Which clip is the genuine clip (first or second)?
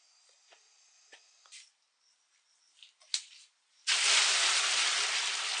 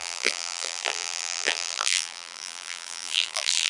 first